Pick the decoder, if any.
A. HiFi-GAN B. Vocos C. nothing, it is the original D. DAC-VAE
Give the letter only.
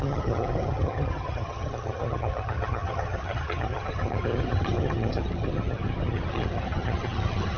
A